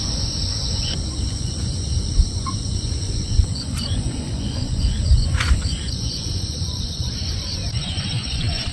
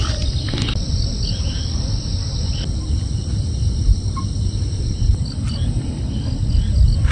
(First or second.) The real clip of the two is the second